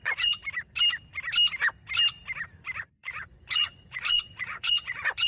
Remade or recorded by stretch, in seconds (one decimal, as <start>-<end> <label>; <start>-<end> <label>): 0.0-0.4 remade; 0.4-2.8 recorded; 2.8-5.3 remade